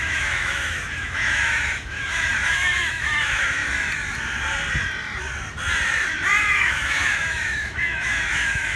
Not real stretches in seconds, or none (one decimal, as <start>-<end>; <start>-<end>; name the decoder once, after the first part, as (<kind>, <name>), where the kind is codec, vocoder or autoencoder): 0.0-3.6 (autoencoder, DAC-VAE); 6.4-8.8